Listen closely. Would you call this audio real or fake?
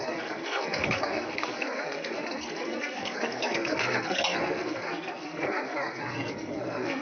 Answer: fake